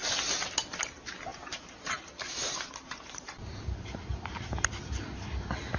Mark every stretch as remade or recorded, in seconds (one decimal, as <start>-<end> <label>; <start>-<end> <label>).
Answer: 0.0-1.3 recorded; 1.3-4.8 remade; 4.8-5.8 recorded